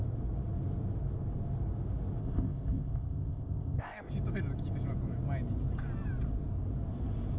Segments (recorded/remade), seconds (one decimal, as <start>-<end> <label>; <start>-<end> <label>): 0.0-2.2 recorded; 2.2-4.1 remade; 4.1-7.4 recorded